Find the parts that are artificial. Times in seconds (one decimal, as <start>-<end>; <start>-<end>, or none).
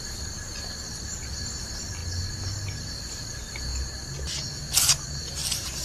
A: 0.0-2.0; 2.9-3.7